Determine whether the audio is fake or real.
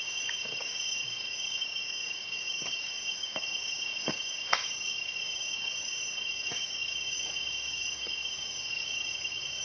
fake